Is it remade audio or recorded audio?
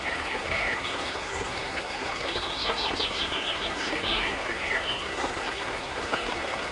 remade